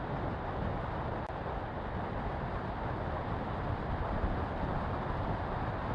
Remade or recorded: recorded